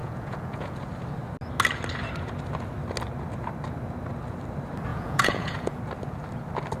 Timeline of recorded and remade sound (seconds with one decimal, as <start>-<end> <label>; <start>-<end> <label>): 0.0-0.8 remade; 0.8-4.9 recorded; 4.9-5.8 remade; 5.8-6.8 recorded